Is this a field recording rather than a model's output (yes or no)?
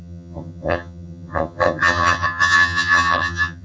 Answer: no